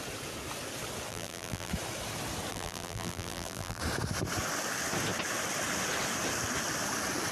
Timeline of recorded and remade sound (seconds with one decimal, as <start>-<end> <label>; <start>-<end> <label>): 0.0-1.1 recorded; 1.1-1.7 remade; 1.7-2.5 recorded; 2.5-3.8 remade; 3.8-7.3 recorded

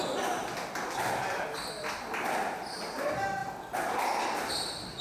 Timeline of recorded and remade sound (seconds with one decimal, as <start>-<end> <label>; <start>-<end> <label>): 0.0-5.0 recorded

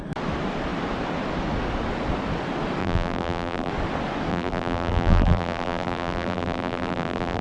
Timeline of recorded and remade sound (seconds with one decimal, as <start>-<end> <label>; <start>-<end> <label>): 0.0-2.8 recorded; 2.8-3.7 remade; 3.7-4.3 recorded; 4.3-7.4 remade